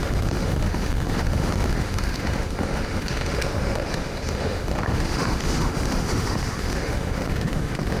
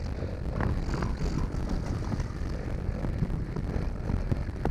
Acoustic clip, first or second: second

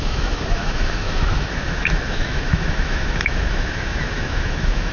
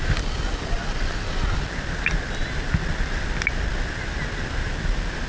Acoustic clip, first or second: second